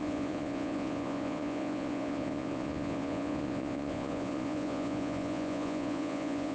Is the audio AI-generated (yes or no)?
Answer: yes